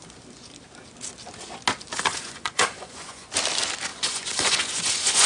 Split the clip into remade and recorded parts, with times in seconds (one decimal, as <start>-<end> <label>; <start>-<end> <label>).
0.0-2.1 recorded; 2.1-3.3 remade; 3.3-3.9 recorded; 3.9-5.3 remade